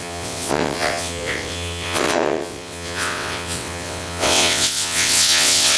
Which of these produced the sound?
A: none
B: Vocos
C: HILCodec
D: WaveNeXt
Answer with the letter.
D